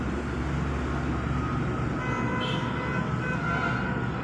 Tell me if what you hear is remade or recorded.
recorded